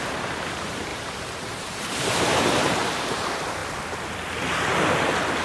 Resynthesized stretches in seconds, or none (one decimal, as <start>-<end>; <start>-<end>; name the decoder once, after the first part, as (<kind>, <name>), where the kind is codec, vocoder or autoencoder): 0.0-3.6 (vocoder, BigVGAN v2)